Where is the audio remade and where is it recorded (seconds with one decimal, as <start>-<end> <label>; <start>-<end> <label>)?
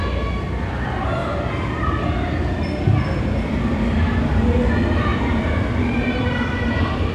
0.0-5.1 recorded; 5.1-7.1 remade